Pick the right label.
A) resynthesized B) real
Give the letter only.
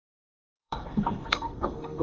A